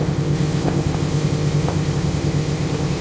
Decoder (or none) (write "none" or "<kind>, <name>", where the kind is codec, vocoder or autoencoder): codec, ZipCodec